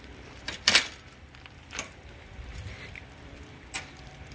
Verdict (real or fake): fake